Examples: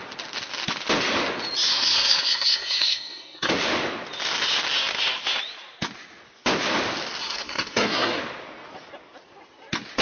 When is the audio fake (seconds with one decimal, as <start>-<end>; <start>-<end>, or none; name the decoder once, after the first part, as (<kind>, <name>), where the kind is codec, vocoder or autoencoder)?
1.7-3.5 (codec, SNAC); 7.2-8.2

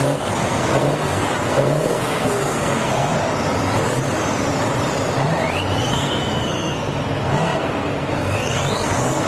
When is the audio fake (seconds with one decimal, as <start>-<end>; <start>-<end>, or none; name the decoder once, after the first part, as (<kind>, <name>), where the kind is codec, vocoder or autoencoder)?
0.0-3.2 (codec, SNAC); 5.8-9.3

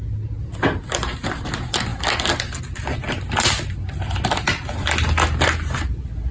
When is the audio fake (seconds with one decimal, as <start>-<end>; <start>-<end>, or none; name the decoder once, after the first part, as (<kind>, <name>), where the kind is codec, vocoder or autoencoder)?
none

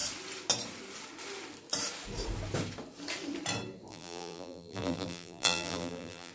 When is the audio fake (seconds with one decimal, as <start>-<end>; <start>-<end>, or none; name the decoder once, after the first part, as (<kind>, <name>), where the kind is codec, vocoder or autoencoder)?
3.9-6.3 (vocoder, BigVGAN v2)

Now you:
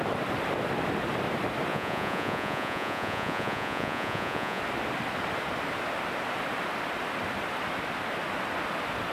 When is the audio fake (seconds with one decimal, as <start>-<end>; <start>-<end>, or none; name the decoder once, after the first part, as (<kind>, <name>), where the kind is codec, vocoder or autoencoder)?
1.7-4.6 (vocoder, Vocos)

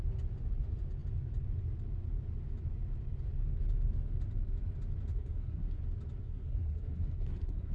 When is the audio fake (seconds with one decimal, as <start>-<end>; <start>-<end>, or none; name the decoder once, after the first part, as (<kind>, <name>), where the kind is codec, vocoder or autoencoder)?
5.1-5.8 (codec, SNAC); 6.2-7.7

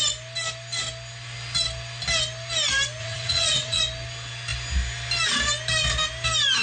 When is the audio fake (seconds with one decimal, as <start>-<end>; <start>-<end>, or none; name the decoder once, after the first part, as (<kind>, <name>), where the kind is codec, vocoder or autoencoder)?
3.0-3.8 (vocoder, WaveNeXt)

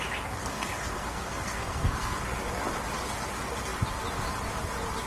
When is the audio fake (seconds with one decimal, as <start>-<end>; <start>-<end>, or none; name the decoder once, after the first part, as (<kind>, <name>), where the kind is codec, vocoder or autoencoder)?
0.4-2.2 (codec, SNAC)